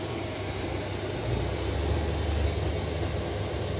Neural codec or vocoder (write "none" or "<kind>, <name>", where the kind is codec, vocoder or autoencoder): none